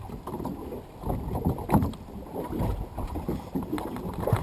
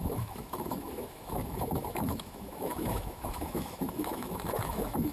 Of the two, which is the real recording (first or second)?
first